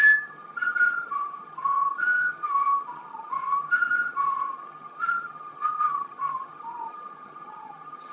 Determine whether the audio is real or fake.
fake